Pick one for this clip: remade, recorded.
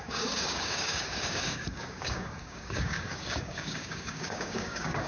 remade